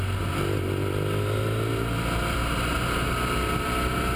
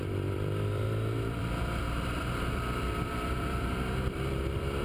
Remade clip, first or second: second